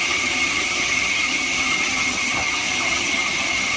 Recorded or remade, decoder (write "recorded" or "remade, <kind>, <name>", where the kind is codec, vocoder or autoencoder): remade, vocoder, HiFi-GAN